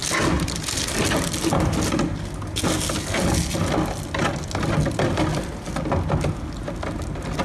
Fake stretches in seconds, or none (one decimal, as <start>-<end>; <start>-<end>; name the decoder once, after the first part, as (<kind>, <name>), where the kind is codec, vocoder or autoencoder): none